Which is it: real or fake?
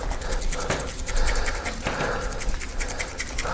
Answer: real